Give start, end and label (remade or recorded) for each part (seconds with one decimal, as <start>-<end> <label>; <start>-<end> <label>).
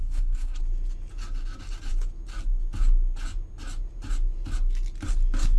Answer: 0.0-0.6 remade; 0.6-5.6 recorded